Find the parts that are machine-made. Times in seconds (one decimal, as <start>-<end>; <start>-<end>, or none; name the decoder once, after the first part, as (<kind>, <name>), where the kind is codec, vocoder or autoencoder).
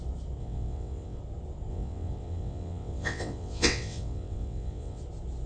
0.4-1.2 (vocoder, WaveNeXt); 1.7-5.0